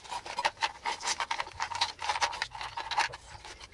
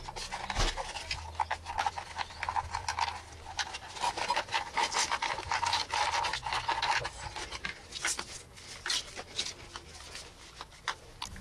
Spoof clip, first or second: first